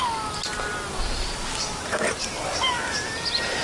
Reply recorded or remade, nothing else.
recorded